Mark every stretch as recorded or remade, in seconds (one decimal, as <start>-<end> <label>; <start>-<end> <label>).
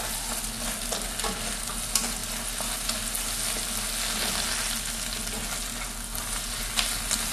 0.0-7.3 recorded